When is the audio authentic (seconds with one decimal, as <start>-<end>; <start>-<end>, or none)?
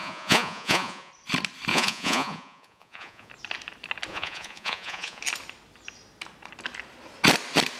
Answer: 1.1-1.7; 3.3-4.1; 5.2-7.8